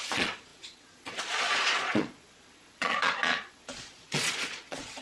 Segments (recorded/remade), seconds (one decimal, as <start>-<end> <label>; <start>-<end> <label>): 0.0-5.0 remade